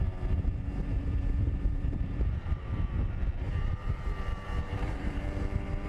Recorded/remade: remade